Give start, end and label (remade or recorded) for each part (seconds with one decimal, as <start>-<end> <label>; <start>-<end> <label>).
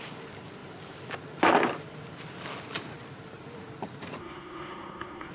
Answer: 0.0-4.2 recorded; 4.2-5.3 remade